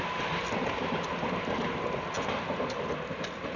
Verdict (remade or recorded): recorded